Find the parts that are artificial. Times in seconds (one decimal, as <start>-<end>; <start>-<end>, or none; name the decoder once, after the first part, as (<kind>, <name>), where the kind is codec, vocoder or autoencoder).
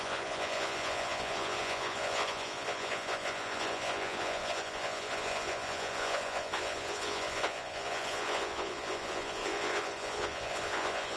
0.0-11.2 (vocoder, Vocos)